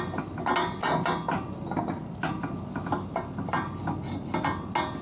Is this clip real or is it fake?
real